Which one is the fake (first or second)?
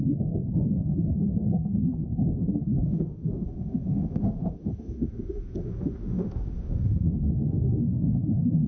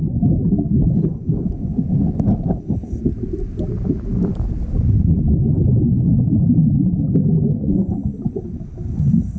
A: first